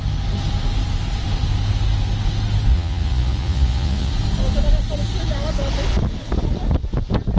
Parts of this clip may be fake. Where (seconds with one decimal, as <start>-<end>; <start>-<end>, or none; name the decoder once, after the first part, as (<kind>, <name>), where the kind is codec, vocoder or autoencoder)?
2.7-4.1 (vocoder, Vocos)